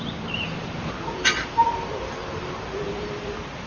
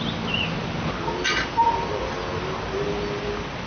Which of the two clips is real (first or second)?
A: second